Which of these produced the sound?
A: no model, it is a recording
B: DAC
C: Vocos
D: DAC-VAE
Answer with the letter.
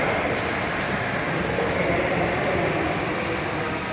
A